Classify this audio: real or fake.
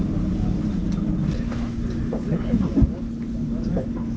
real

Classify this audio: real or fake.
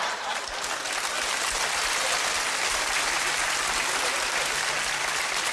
real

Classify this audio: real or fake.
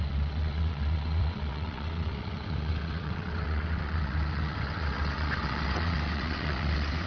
fake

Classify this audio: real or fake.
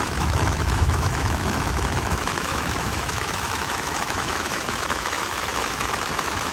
fake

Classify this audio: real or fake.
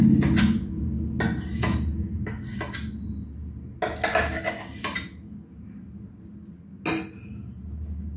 real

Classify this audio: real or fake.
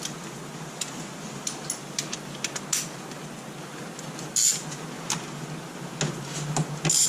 real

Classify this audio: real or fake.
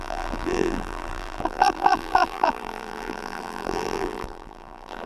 fake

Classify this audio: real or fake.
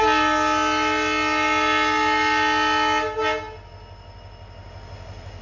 real